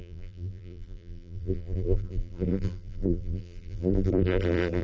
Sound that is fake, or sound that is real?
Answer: fake